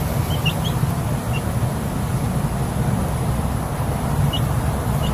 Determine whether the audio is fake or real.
real